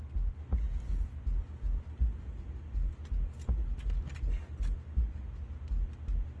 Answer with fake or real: real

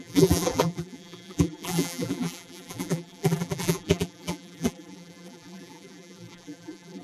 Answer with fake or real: fake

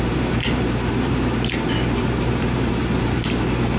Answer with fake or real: fake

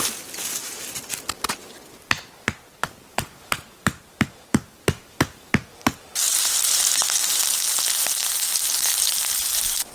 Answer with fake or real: real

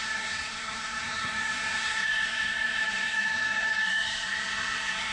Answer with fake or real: fake